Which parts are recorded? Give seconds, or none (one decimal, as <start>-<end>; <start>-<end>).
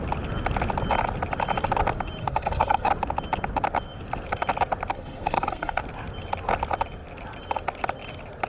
0.0-2.2; 2.9-4.9; 5.8-8.5